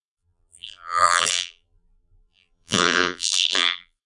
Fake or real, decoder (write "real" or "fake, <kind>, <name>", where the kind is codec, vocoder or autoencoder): fake, vocoder, BigVGAN v2